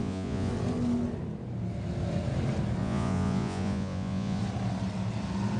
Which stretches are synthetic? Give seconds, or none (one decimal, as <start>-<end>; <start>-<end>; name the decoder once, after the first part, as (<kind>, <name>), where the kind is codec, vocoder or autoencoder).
0.0-0.5 (vocoder, Vocos); 2.8-4.4